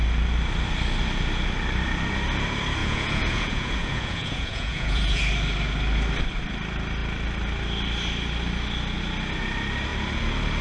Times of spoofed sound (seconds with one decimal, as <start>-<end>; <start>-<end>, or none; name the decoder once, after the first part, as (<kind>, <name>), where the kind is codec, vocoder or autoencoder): 2.8-5.2 (vocoder, Vocos)